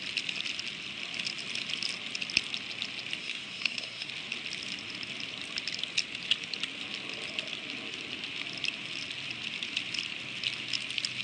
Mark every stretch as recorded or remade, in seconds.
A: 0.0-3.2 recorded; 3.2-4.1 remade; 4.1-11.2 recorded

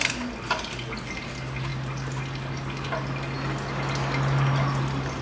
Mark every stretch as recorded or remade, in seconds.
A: 0.0-5.2 recorded

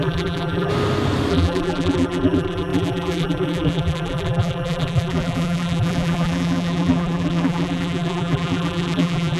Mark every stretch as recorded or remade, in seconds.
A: 0.0-0.7 remade; 0.7-1.3 recorded; 1.3-9.4 remade

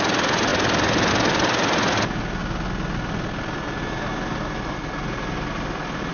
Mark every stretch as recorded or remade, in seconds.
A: 0.0-6.1 recorded

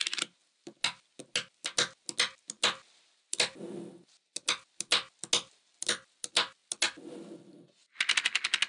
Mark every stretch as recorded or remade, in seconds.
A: 0.0-8.7 recorded

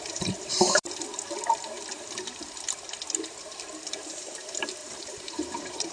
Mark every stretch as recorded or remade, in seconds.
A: 0.0-4.8 recorded; 4.8-5.9 remade